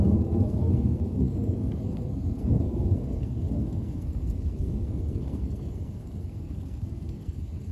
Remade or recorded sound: remade